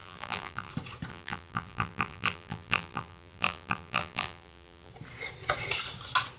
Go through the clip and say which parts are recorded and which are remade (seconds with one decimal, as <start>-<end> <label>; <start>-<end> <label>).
0.0-0.7 remade; 0.7-1.1 recorded; 1.1-4.9 remade; 4.9-6.4 recorded

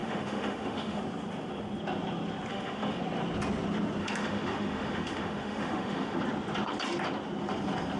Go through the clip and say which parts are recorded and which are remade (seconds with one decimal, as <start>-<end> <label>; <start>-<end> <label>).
0.0-1.0 remade; 1.0-2.5 recorded; 2.5-3.0 remade; 3.0-4.0 recorded; 4.0-6.2 remade; 6.2-8.0 recorded

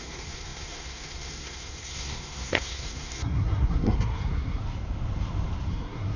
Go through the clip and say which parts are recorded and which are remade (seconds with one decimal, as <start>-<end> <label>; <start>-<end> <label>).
0.0-4.6 remade; 4.6-5.7 recorded; 5.7-6.2 remade

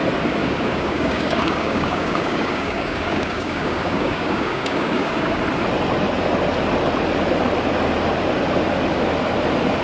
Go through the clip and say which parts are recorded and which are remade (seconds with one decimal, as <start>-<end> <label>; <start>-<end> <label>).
0.0-0.4 recorded; 0.4-5.4 remade; 5.4-9.8 recorded